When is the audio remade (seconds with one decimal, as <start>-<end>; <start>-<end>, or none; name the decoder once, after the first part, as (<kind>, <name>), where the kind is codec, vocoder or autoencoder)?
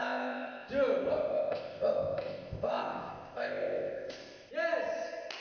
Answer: 0.0-0.7 (codec, ZipCodec); 1.3-4.5